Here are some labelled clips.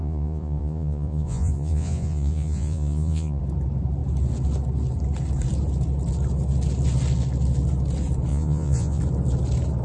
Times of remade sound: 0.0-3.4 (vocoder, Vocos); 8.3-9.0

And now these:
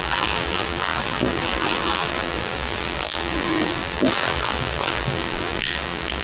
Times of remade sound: 0.0-6.2 (vocoder, BigVGAN v2)

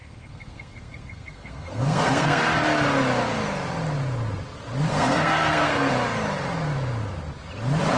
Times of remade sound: 0.0-2.4 (codec, SNAC); 4.9-5.9

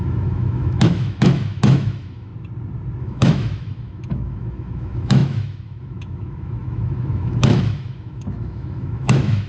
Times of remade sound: 0.0-2.3 (autoencoder, DAC-VAE); 3.0-9.5

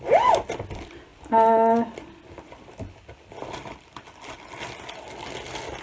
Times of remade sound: none

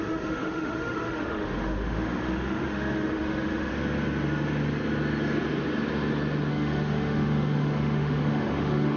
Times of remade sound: 0.0-3.7 (autoencoder, DAC-VAE); 6.5-9.0

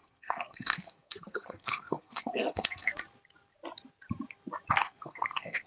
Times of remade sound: 0.0-2.9 (codec, SNAC); 4.8-5.7